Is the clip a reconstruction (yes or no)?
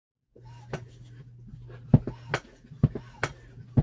no